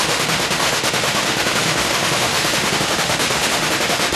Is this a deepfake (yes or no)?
yes